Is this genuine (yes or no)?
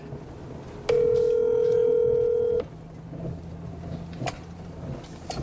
yes